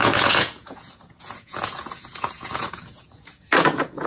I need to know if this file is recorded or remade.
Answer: remade